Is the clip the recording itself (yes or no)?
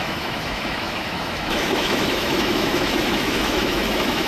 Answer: no